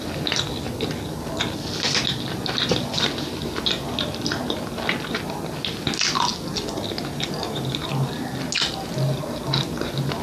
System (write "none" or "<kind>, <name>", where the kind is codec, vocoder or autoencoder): none